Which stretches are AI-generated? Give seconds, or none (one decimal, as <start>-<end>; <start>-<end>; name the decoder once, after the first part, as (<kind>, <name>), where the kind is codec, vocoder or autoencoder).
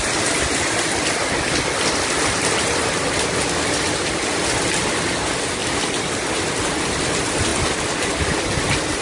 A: 5.6-7.1 (vocoder, BigVGAN v2)